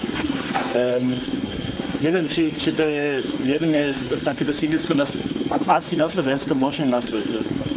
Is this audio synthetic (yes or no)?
yes